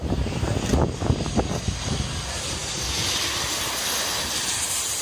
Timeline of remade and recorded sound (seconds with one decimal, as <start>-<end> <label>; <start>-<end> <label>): 0.0-5.0 recorded

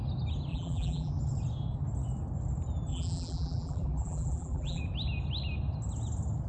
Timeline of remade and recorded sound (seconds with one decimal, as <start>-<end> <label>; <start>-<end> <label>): 0.0-0.5 recorded; 0.5-1.1 remade; 1.1-2.9 recorded; 2.9-4.8 remade; 4.8-6.5 recorded

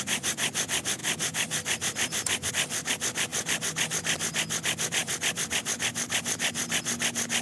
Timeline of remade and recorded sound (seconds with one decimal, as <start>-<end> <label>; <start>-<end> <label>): 0.0-1.0 recorded; 1.0-2.5 remade; 2.5-7.4 recorded

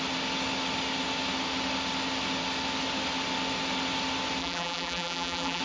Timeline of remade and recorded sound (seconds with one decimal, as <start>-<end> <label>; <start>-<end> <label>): 0.0-4.4 recorded; 4.4-5.6 remade

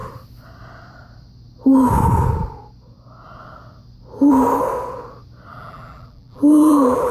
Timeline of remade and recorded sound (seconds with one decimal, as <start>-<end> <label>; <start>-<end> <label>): 0.0-5.5 recorded; 5.5-7.1 remade

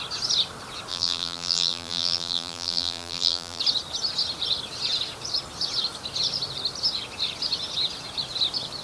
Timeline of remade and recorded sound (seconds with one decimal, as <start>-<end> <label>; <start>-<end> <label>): 0.0-0.9 recorded; 0.9-3.6 remade; 3.6-8.8 recorded

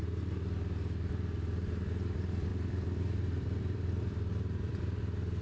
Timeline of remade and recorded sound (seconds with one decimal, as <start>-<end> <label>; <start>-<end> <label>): 0.0-2.5 recorded; 2.5-5.0 remade; 5.0-5.4 recorded

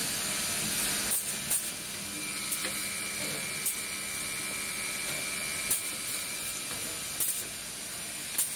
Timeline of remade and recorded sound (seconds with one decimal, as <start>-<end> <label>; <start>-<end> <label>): 0.0-8.6 recorded